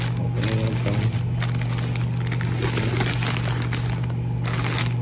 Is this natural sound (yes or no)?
yes